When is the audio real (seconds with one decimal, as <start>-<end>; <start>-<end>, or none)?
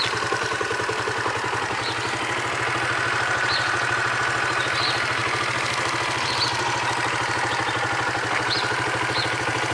0.0-9.7